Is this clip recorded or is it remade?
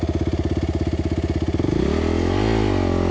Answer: recorded